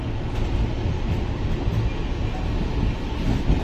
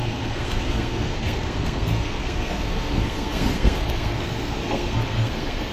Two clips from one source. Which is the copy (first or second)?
second